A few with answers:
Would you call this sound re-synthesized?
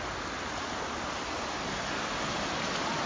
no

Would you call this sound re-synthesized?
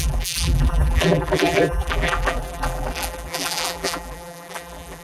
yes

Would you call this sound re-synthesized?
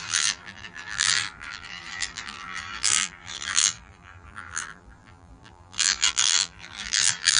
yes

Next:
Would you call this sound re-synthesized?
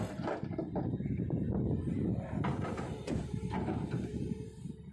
yes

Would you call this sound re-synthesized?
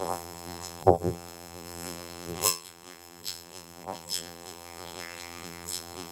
yes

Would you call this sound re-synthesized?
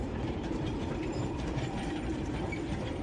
yes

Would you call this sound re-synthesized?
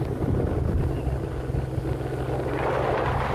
no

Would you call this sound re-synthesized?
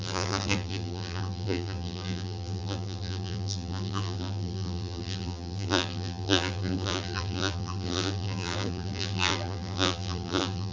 yes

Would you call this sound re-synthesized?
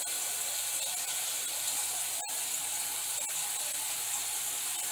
no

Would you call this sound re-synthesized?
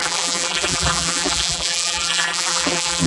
yes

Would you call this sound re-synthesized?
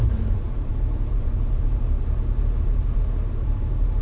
yes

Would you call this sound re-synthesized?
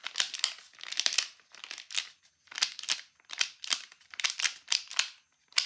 no